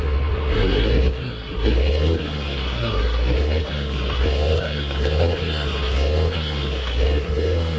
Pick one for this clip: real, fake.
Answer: fake